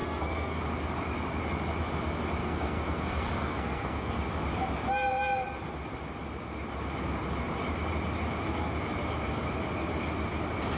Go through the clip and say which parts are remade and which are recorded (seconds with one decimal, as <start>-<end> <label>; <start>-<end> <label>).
0.0-0.6 remade; 0.6-2.4 recorded; 2.4-4.1 remade; 4.1-10.8 recorded